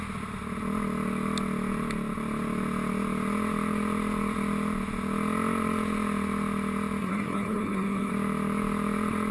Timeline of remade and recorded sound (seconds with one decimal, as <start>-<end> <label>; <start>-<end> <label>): 0.0-7.0 recorded; 7.0-8.1 remade; 8.1-9.3 recorded

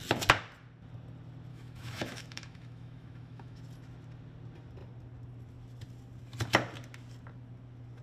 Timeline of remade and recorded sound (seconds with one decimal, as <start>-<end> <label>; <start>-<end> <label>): 0.0-1.5 recorded; 1.5-3.6 remade; 3.6-8.0 recorded

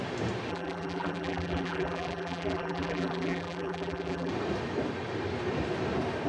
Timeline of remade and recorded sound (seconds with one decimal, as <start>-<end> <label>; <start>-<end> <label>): 0.0-0.5 recorded; 0.5-4.3 remade; 4.3-6.3 recorded

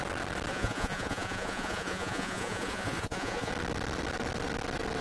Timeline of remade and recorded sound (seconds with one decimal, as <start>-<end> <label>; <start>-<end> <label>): 0.0-0.5 recorded; 0.5-3.5 remade; 3.5-5.0 recorded

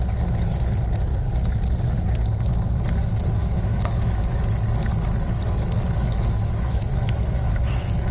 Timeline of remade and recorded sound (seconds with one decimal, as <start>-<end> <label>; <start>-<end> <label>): 0.0-3.4 recorded; 3.4-4.4 remade; 4.4-6.0 recorded; 6.0-8.1 remade

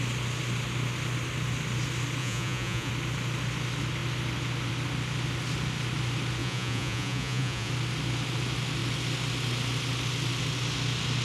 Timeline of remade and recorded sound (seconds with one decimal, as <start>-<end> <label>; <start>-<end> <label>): 0.0-2.2 recorded; 2.2-2.9 remade; 2.9-6.4 recorded; 6.4-7.7 remade; 7.7-11.2 recorded

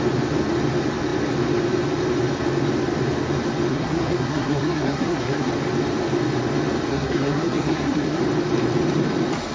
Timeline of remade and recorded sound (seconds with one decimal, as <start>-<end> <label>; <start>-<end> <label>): 0.0-3.7 recorded; 3.7-5.5 remade; 5.5-6.9 recorded; 6.9-8.2 remade; 8.2-9.5 recorded

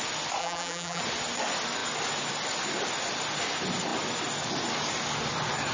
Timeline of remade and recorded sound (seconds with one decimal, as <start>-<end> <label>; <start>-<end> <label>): 0.0-0.4 recorded; 0.4-1.0 remade; 1.0-5.7 recorded